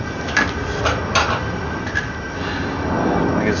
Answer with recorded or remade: recorded